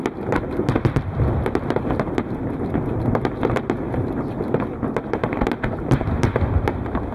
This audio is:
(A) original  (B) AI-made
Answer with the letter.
B